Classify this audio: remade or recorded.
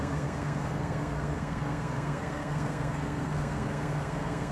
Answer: remade